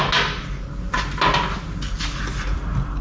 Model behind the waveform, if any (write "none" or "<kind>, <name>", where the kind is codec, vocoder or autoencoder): none